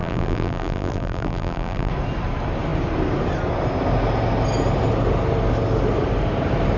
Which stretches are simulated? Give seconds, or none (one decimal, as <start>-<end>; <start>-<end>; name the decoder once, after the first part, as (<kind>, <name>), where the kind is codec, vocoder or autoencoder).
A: 0.0-1.9 (vocoder, BigVGAN v2)